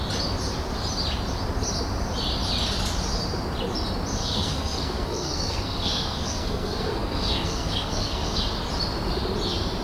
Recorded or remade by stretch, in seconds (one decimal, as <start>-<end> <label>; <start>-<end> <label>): 0.0-4.2 recorded; 4.2-8.4 remade; 8.4-9.8 recorded